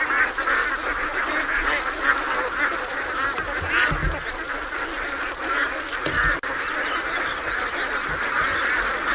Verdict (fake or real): real